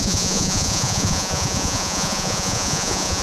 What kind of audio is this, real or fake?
fake